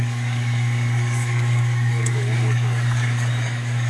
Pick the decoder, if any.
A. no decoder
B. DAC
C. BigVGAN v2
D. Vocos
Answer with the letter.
B